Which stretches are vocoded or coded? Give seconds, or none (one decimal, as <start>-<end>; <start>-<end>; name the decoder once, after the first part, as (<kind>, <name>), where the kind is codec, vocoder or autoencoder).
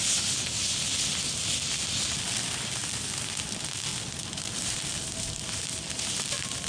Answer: 3.9-4.8 (vocoder, BigVGAN v2)